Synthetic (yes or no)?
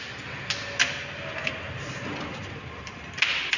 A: no